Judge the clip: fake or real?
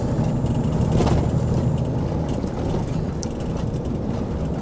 real